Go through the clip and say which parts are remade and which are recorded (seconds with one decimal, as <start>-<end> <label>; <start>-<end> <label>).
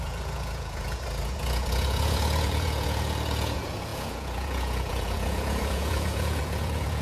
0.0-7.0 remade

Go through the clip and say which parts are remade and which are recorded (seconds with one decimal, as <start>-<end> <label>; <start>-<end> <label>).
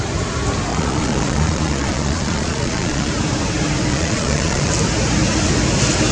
0.0-0.7 recorded; 0.7-3.1 remade; 3.1-3.9 recorded; 3.9-4.7 remade; 4.7-6.1 recorded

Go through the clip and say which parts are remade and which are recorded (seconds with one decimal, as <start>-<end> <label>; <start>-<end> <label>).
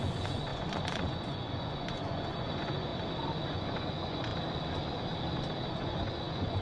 0.0-2.9 remade; 2.9-3.5 recorded; 3.5-4.3 remade; 4.3-5.7 recorded; 5.7-6.6 remade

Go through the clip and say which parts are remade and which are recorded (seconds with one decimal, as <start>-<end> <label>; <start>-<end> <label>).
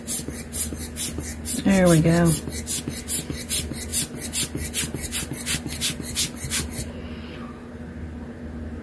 0.0-8.8 recorded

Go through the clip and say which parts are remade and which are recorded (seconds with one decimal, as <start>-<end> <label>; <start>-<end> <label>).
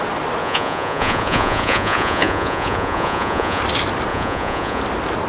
0.0-0.4 recorded; 0.4-3.6 remade; 3.6-4.1 recorded; 4.1-4.8 remade; 4.8-5.3 recorded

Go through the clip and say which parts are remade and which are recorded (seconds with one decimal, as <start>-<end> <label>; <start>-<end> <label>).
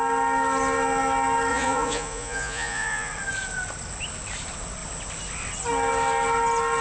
0.0-1.5 recorded; 1.5-3.1 remade; 3.1-6.8 recorded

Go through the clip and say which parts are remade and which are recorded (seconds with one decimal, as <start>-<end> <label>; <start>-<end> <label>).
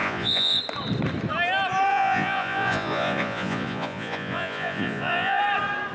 0.0-0.6 remade; 0.6-1.9 recorded; 1.9-5.4 remade; 5.4-5.9 recorded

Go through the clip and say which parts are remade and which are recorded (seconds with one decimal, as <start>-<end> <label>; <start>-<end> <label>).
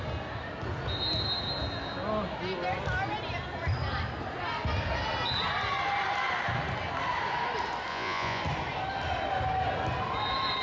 0.0-7.9 recorded; 7.9-8.4 remade; 8.4-10.6 recorded